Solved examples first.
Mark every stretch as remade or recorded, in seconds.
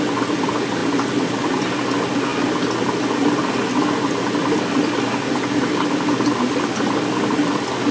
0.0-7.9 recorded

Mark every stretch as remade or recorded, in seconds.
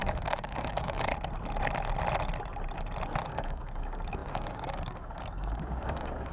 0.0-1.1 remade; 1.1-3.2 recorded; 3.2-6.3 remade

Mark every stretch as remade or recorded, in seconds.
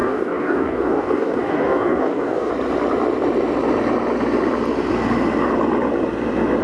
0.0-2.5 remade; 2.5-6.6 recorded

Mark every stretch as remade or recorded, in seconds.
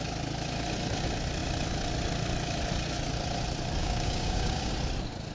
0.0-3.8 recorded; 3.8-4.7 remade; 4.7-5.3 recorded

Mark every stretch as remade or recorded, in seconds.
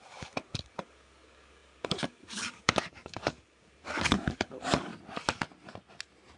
0.0-4.9 remade; 4.9-6.4 recorded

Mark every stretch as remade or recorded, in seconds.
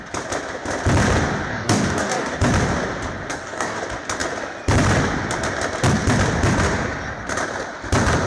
0.0-1.5 recorded; 1.5-2.4 remade; 2.4-3.3 recorded; 3.3-3.8 remade; 3.8-8.3 recorded